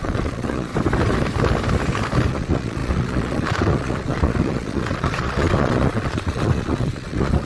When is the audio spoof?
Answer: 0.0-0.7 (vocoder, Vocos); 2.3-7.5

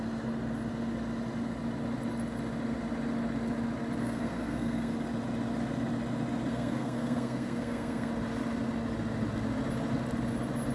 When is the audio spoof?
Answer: 4.0-4.9 (codec, SNAC); 6.5-8.1

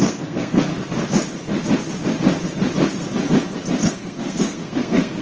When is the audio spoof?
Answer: 0.0-0.7 (codec, SNAC); 3.8-5.2

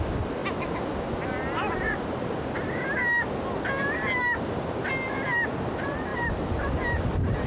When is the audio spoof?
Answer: 6.1-6.7 (vocoder, BigVGAN v2)

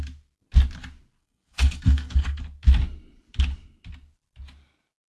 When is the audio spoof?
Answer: 1.2-2.4 (codec, SNAC)